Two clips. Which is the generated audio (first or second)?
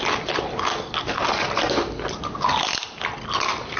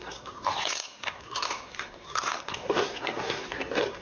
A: second